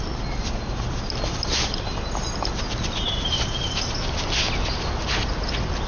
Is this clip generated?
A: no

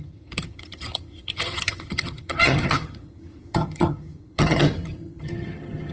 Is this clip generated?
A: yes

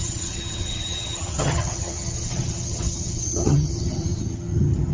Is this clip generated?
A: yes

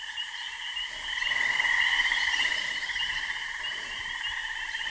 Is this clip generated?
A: no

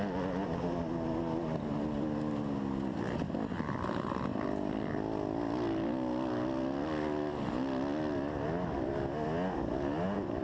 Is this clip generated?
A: no